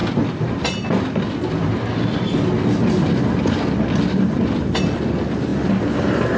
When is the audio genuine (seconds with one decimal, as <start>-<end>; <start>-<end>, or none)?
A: 0.0-6.4